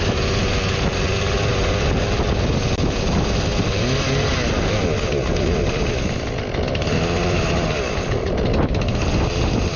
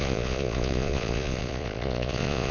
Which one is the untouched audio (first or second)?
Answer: first